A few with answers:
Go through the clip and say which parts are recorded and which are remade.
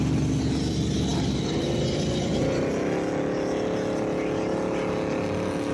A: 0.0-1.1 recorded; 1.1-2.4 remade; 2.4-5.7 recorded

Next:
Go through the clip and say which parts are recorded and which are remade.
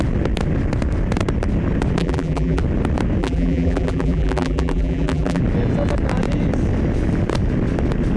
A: 0.0-2.0 recorded; 2.0-2.6 remade; 2.6-3.2 recorded; 3.2-5.4 remade; 5.4-8.2 recorded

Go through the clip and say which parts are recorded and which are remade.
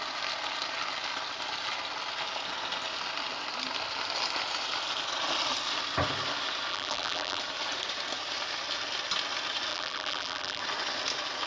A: 0.0-6.7 recorded; 6.7-7.4 remade; 7.4-9.7 recorded; 9.7-10.6 remade; 10.6-11.5 recorded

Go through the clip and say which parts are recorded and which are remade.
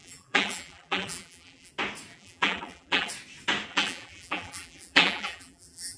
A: 0.0-1.7 remade; 1.7-2.1 recorded; 2.1-3.1 remade; 3.1-3.7 recorded; 3.7-6.0 remade